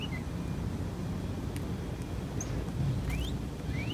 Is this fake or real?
real